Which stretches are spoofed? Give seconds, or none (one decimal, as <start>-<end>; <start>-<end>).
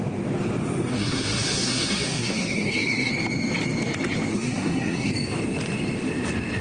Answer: 0.9-3.1; 4.3-5.1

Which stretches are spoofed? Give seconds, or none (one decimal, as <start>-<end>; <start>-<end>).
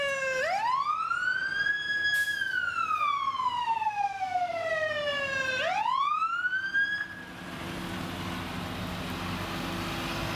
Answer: 3.6-4.9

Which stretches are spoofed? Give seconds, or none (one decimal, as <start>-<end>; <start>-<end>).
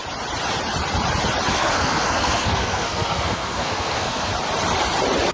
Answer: 1.5-4.3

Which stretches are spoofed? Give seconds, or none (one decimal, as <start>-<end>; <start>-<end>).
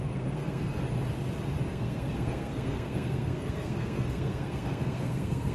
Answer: 0.0-0.8; 1.7-5.5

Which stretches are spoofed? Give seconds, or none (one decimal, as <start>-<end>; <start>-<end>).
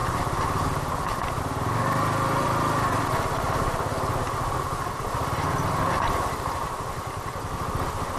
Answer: none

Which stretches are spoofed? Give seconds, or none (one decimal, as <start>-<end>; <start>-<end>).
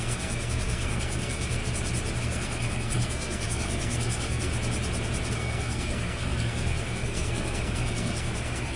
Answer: 0.0-1.6; 2.2-4.5; 5.3-8.8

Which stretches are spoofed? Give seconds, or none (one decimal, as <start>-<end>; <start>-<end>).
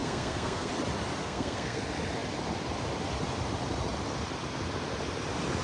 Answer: 0.0-0.7; 1.2-1.8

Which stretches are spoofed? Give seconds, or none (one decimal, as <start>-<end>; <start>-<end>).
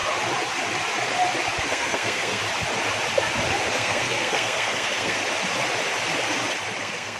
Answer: 1.7-2.4; 3.7-5.2; 6.8-7.2